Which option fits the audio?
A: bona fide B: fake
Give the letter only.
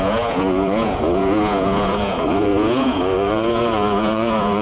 B